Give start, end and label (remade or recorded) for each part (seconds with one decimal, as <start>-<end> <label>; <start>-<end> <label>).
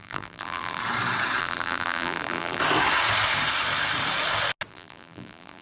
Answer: 0.0-0.8 remade; 0.8-1.4 recorded; 1.4-2.6 remade; 2.6-4.7 recorded; 4.7-5.6 remade